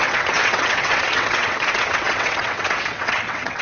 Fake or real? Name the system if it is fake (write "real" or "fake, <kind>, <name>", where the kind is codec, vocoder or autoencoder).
fake, vocoder, WaveNeXt